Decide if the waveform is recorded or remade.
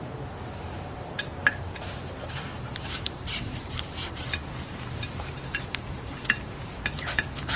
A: remade